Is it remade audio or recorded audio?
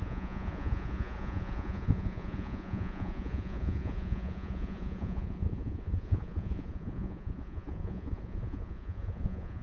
remade